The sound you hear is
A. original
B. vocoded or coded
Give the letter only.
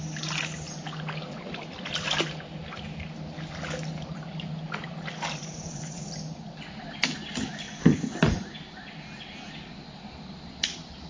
A